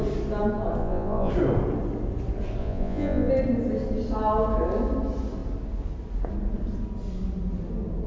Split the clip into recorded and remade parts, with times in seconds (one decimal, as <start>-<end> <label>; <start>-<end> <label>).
0.0-0.8 recorded; 0.8-1.3 remade; 1.3-2.6 recorded; 2.6-3.3 remade; 3.3-8.1 recorded